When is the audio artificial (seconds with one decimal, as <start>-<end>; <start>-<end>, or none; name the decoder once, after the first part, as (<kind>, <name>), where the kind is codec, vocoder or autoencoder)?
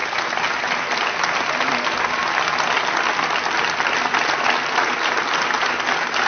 none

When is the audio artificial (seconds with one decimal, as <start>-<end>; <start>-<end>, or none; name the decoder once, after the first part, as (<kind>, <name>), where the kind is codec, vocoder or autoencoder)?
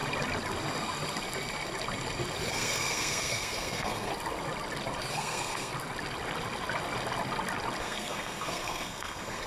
2.5-4.1 (codec, SNAC); 5.1-5.7; 7.8-9.5